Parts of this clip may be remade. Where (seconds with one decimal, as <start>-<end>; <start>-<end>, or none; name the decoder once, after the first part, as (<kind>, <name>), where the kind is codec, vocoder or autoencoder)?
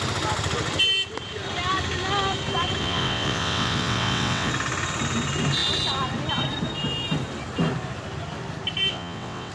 2.8-4.5 (vocoder, WaveNeXt); 8.9-9.5